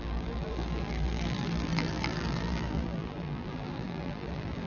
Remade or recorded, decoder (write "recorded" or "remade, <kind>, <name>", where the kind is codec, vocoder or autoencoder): remade, vocoder, BigVGAN v2